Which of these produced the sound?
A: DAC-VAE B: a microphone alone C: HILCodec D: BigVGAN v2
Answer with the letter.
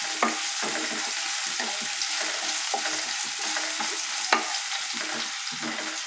B